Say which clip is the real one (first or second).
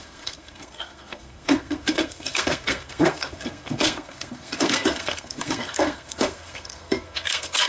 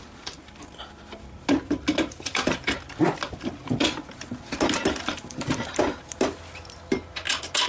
second